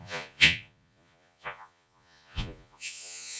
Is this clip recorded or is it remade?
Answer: remade